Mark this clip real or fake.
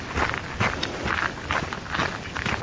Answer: real